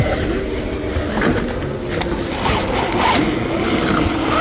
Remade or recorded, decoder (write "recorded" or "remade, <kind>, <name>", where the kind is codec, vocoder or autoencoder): recorded